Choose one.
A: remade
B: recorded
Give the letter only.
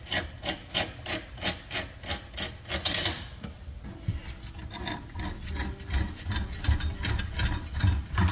B